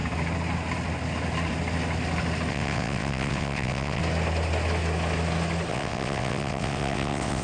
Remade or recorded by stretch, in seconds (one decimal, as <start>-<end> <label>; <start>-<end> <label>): 0.0-2.5 recorded; 2.5-4.0 remade; 4.0-5.7 recorded; 5.7-7.4 remade